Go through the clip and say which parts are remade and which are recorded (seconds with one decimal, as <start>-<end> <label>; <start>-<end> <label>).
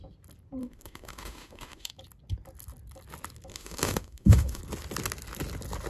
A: 0.0-0.6 recorded; 0.6-1.9 remade; 1.9-3.5 recorded; 3.5-4.6 remade; 4.6-5.9 recorded